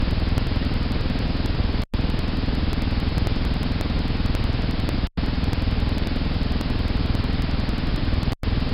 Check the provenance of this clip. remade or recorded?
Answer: recorded